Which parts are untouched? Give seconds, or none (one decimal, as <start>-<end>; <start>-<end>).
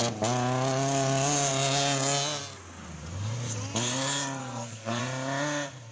0.0-4.4; 5.0-5.9